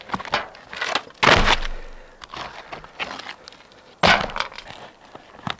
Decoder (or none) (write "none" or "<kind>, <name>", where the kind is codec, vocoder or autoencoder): none